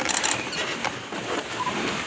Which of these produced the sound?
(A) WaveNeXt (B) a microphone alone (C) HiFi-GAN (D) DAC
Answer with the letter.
B